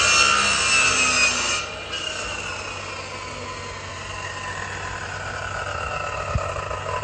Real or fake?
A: real